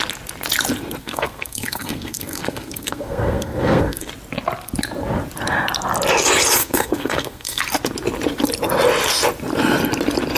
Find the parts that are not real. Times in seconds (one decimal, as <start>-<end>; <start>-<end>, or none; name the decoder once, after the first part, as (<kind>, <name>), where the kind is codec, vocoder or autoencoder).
1.0-4.1 (codec, SNAC); 6.6-7.6